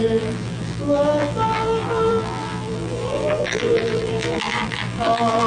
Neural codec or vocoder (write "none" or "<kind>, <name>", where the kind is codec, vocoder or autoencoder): vocoder, BigVGAN v2